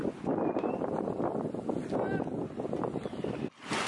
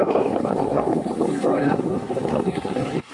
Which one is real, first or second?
first